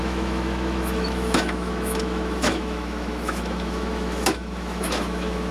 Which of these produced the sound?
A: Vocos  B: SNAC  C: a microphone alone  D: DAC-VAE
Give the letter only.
D